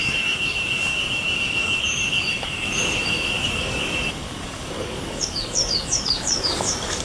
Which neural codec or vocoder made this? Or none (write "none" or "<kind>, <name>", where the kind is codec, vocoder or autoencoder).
codec, DAC